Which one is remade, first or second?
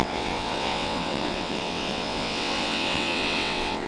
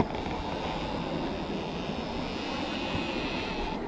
first